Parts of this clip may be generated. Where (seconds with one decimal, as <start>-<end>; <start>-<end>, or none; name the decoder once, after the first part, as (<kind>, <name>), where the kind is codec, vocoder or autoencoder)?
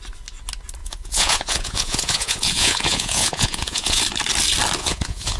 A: 0.8-4.0 (vocoder, Vocos); 4.8-5.4